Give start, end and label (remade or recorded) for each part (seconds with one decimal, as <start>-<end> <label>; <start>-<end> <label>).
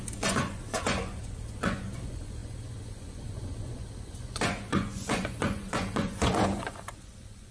0.0-7.5 remade